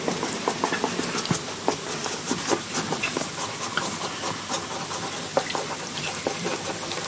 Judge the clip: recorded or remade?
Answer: recorded